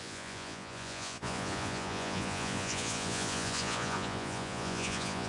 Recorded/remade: remade